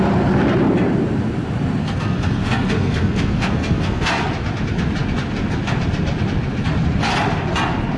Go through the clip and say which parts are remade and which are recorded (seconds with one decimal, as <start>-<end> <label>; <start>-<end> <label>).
0.0-1.8 recorded; 1.8-4.1 remade; 4.1-8.0 recorded